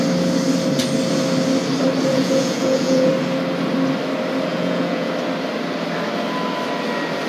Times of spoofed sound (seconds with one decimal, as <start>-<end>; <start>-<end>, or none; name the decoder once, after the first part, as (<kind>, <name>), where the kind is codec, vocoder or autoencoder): 2.1-3.1 (vocoder, Vocos); 4.5-5.1